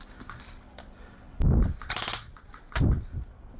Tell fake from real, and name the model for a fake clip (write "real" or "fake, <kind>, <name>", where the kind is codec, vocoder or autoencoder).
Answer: fake, vocoder, BigVGAN v2